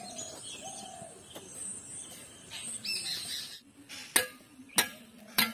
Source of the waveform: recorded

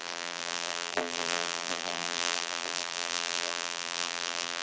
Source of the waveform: remade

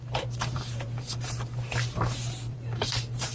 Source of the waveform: remade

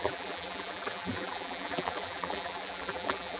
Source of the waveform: remade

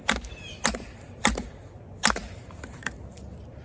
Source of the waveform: remade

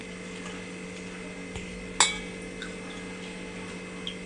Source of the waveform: recorded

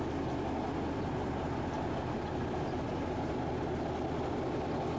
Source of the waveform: recorded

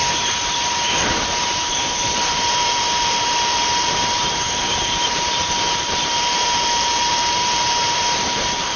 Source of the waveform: remade